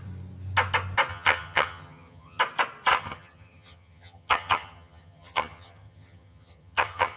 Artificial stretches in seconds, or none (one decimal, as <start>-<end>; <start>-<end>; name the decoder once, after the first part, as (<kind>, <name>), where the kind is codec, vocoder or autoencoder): 1.1-2.4 (vocoder, HiFi-GAN); 2.9-7.2